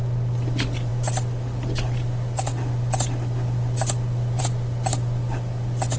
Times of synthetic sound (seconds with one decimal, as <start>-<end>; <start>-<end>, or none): none